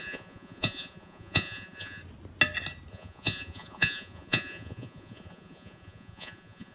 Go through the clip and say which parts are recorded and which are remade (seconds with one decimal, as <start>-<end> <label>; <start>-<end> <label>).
0.0-2.0 remade; 2.0-2.9 recorded; 2.9-6.7 remade